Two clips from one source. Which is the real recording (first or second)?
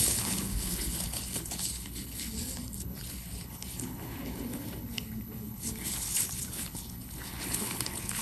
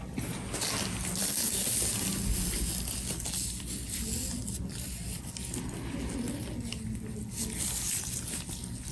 second